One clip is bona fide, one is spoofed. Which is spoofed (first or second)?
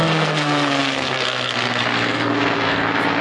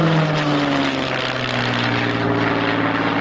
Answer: first